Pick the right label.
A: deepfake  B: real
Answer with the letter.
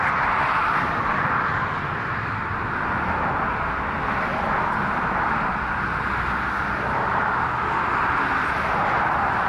B